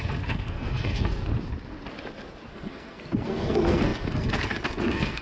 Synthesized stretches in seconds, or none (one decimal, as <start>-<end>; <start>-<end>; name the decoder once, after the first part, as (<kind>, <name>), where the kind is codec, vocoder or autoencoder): 0.0-1.3 (codec, SNAC); 2.5-5.2